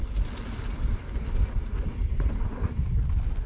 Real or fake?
real